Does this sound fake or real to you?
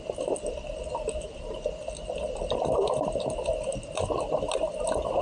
real